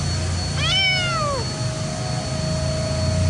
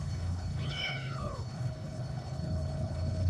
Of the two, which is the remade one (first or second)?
second